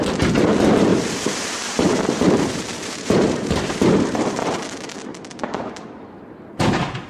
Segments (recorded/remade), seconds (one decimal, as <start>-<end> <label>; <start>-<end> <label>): 0.0-0.9 recorded; 0.9-4.4 remade; 4.4-7.1 recorded